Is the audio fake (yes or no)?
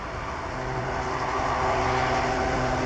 no